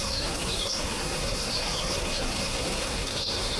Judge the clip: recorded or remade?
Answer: remade